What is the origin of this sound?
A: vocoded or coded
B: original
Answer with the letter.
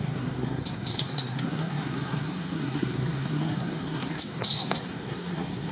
A